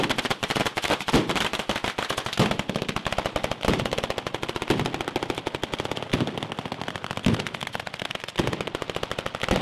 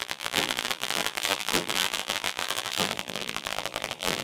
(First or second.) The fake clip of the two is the second